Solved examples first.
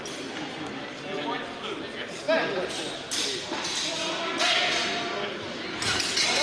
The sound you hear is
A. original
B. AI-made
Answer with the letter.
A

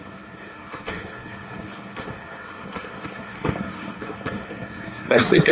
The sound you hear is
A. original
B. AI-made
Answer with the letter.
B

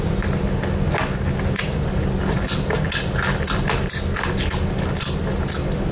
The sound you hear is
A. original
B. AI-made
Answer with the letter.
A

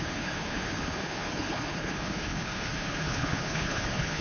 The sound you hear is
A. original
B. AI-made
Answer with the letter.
B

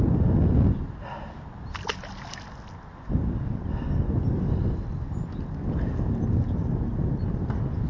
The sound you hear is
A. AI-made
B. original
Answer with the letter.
B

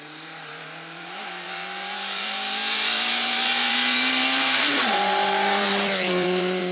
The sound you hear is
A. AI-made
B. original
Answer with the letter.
A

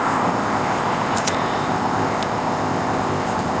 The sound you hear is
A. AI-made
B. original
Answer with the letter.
A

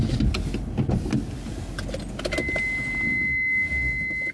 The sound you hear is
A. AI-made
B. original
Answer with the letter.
B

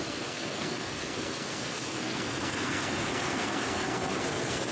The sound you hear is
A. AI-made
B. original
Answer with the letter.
A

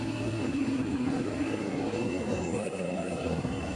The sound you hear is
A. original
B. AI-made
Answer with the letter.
B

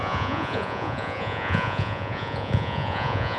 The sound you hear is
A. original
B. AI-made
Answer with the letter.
B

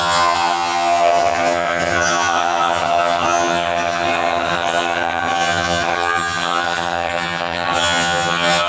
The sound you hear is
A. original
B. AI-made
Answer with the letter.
B